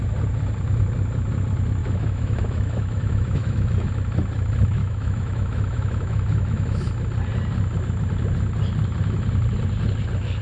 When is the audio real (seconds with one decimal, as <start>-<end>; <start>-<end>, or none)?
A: 0.0-1.8; 3.9-4.8; 6.9-10.4